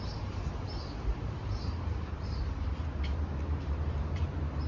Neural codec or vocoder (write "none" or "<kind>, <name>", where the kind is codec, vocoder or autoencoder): vocoder, BigVGAN v2